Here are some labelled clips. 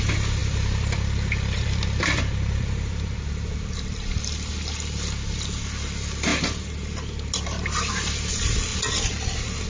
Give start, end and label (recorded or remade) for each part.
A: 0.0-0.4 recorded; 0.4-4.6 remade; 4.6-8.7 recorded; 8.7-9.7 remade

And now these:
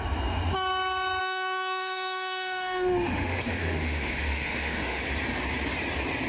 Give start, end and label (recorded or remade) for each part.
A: 0.0-1.2 recorded; 1.2-5.0 remade; 5.0-6.3 recorded